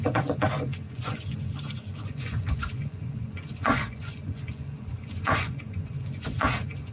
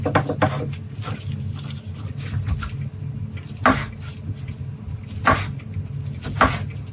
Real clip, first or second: second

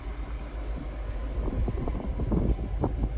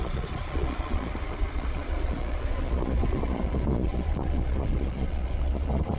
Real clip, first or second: first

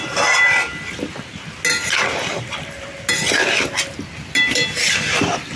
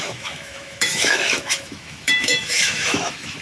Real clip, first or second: first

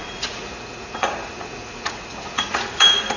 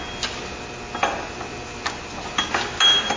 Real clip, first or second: second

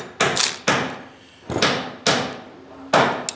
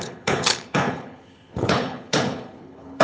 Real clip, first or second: first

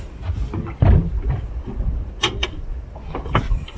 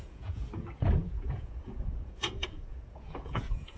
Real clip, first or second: first